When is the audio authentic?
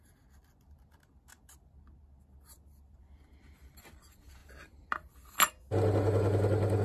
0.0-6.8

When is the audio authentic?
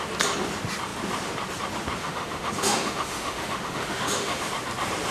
0.0-2.0; 4.5-5.1